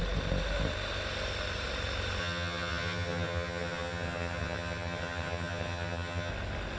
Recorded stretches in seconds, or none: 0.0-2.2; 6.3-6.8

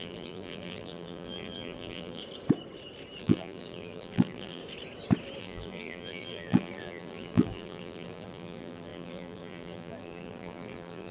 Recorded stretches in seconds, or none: 2.2-3.2; 4.6-5.4

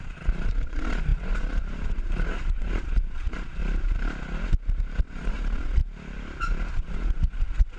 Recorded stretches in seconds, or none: 3.6-5.0; 5.8-6.7

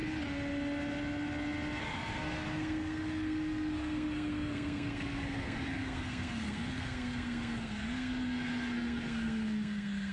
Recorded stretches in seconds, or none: 0.0-1.8

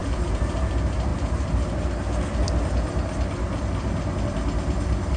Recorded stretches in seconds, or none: 0.7-5.2